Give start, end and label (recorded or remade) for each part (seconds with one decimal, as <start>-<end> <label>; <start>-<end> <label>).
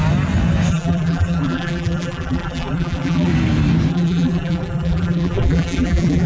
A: 0.0-0.7 recorded; 0.7-3.3 remade; 3.3-3.9 recorded; 3.9-6.3 remade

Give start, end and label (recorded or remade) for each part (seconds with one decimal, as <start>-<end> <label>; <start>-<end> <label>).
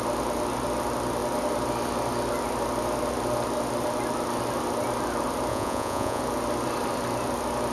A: 0.0-5.5 recorded; 5.5-6.2 remade; 6.2-7.7 recorded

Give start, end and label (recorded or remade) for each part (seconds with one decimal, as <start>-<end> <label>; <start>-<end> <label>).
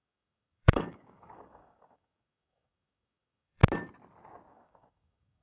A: 0.0-3.6 remade; 3.6-4.5 recorded; 4.5-5.4 remade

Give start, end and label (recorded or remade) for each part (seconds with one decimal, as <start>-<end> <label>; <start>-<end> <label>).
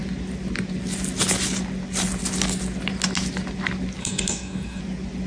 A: 0.0-4.0 recorded; 4.0-4.8 remade; 4.8-5.3 recorded